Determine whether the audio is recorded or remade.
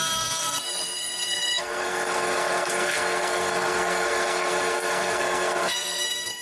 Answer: remade